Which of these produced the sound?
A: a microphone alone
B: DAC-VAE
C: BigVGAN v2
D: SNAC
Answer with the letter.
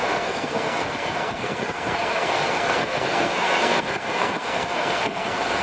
D